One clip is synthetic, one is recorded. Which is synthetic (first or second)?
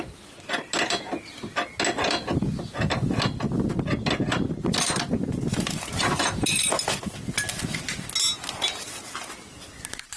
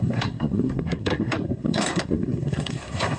second